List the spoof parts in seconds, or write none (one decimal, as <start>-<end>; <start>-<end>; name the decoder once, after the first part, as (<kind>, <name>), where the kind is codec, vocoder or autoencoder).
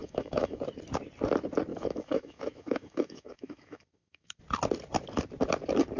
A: 0.0-0.6 (autoencoder, DAC-VAE); 1.7-4.4